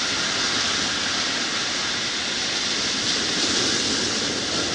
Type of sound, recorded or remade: recorded